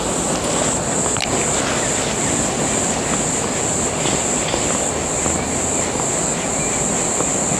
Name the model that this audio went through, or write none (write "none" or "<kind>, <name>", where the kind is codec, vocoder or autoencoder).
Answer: none